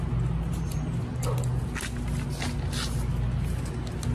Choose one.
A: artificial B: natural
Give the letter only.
B